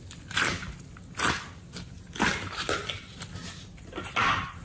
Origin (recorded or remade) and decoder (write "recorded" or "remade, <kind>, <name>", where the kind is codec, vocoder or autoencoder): recorded